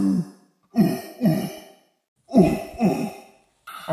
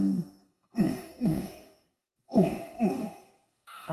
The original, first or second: first